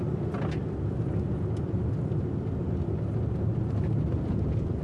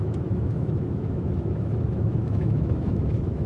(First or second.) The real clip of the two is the first